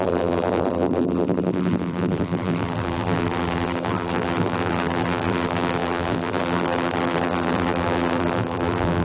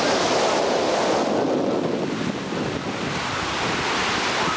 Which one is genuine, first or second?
second